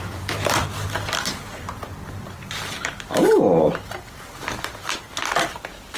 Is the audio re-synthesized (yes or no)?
no